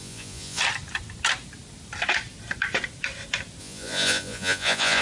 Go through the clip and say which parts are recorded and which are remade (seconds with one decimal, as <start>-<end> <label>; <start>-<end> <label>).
0.0-0.6 remade; 0.6-3.6 recorded; 3.6-5.0 remade